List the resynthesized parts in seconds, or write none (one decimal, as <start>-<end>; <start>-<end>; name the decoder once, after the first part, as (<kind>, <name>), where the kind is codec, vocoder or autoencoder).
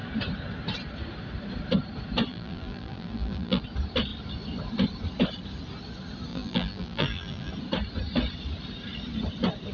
2.3-3.6 (vocoder, BigVGAN v2); 6.3-7.5